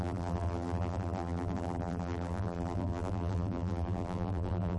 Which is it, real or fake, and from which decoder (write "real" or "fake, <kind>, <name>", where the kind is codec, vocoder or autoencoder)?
fake, vocoder, BigVGAN v2